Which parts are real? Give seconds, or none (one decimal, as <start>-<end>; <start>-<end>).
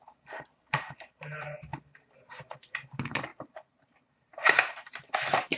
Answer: 1.7-2.3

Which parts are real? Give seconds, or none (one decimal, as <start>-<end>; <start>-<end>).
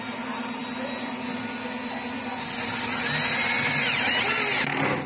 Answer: 0.0-5.1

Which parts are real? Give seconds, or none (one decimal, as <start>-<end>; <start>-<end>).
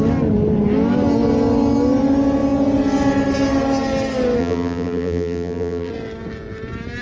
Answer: 0.0-4.4; 5.9-7.0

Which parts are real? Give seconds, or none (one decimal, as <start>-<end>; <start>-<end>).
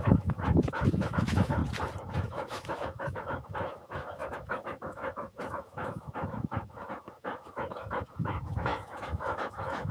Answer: 1.6-2.1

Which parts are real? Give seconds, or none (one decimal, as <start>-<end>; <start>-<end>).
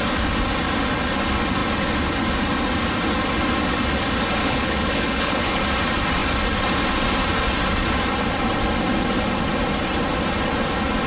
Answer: 0.0-4.4; 5.6-11.1